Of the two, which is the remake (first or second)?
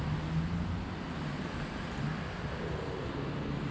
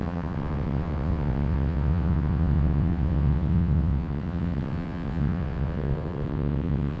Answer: second